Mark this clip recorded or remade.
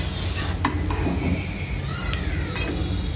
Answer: recorded